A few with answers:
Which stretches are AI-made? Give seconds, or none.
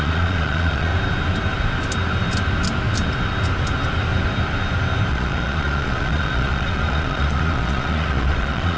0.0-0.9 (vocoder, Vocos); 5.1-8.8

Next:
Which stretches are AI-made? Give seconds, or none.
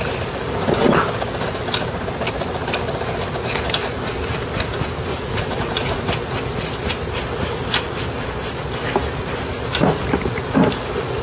5.1-6.0 (vocoder, Vocos)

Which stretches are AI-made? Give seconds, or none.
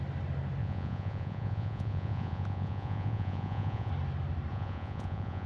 0.6-3.9 (vocoder, Vocos); 4.5-5.5